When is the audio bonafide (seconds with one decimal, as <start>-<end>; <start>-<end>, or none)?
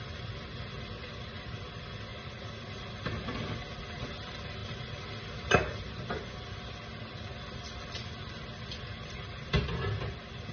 0.0-2.1; 3.0-10.5